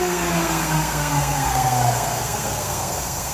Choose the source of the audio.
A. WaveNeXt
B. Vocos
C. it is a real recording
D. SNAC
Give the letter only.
D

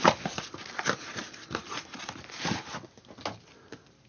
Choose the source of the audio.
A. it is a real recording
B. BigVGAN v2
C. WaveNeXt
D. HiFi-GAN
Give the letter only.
A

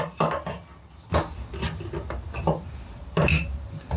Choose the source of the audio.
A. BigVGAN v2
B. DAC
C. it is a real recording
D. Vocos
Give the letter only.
C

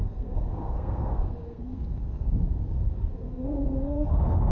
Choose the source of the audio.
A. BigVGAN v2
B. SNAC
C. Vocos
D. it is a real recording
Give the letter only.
B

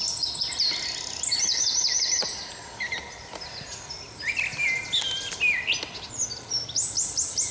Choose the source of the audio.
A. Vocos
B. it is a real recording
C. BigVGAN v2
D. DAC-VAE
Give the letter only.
B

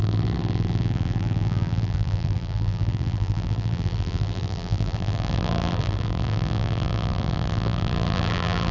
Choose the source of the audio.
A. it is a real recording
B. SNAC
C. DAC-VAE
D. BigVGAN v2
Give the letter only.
D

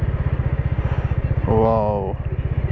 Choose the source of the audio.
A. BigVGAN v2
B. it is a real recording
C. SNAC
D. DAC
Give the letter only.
B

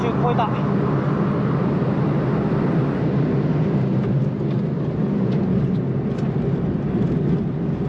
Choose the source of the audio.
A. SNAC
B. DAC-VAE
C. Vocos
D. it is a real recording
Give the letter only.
D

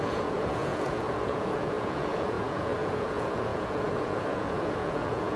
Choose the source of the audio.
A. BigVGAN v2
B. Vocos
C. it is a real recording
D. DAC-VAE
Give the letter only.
B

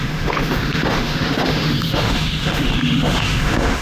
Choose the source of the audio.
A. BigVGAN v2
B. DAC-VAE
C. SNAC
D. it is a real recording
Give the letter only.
B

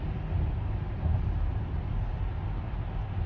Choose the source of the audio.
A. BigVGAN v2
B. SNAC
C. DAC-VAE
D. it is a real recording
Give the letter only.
D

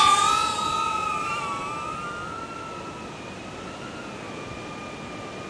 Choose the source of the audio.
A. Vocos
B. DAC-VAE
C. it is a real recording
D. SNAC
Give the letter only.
C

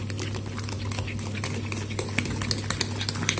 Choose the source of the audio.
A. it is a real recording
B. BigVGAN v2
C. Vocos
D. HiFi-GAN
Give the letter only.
A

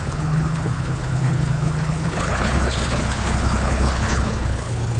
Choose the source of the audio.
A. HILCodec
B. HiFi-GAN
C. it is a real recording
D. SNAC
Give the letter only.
A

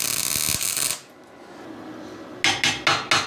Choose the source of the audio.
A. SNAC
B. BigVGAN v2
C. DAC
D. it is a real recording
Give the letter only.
D